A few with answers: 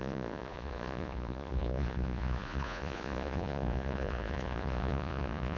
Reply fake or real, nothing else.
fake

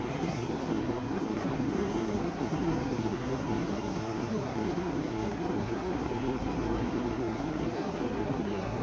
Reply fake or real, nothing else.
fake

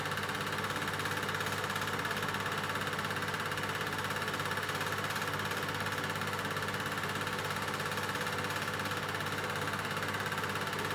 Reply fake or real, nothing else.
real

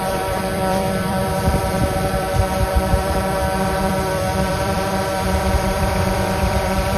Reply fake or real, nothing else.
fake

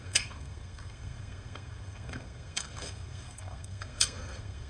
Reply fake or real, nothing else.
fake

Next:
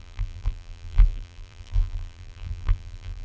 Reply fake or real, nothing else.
fake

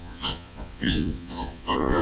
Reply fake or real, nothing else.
fake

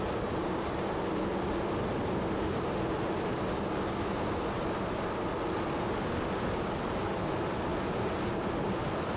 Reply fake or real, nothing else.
real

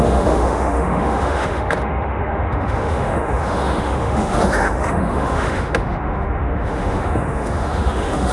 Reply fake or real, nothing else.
fake